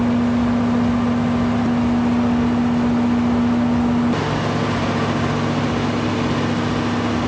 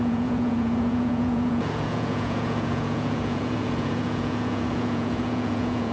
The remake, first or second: second